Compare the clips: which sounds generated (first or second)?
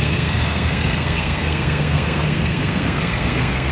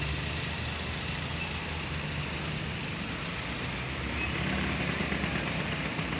first